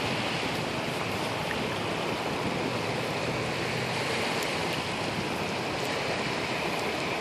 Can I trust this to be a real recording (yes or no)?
yes